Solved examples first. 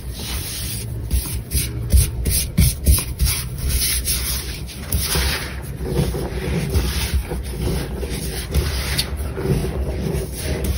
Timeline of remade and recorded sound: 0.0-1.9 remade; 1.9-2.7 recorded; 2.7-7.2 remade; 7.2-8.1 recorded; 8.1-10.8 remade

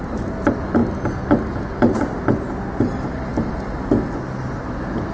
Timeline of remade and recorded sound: 0.0-5.1 recorded

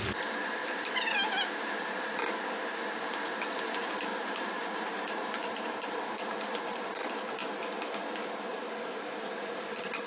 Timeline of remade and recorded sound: 0.0-0.6 recorded; 0.6-2.0 remade; 2.0-4.1 recorded; 4.1-6.0 remade; 6.0-8.5 recorded; 8.5-9.1 remade; 9.1-10.1 recorded

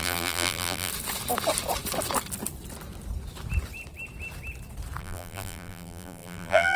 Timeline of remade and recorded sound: 0.0-0.9 remade; 0.9-5.0 recorded; 5.0-6.8 remade

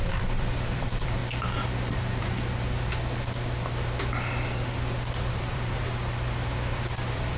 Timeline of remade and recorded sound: 0.0-1.2 remade; 1.2-5.3 recorded; 5.3-7.4 remade

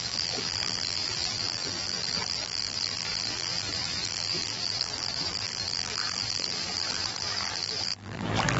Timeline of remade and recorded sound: 0.0-8.6 remade

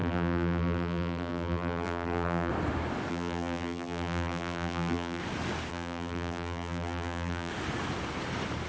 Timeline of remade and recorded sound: 0.0-2.5 remade; 2.5-3.1 recorded; 3.1-5.2 remade; 5.2-5.7 recorded; 5.7-7.5 remade; 7.5-8.7 recorded